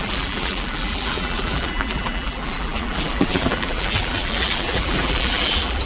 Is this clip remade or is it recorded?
remade